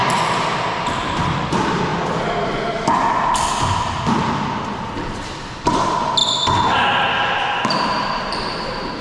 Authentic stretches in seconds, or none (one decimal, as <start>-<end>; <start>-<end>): 1.9-4.8; 6.2-8.2